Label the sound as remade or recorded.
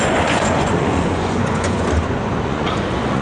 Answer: remade